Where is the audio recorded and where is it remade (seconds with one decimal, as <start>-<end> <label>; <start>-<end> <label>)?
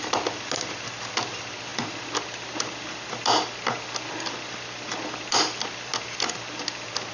0.0-7.1 recorded